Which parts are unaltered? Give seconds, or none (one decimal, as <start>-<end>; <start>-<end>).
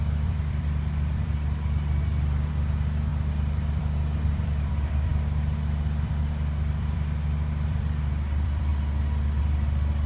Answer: 3.1-3.8; 8.7-9.4